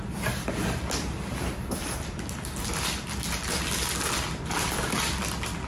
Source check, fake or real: real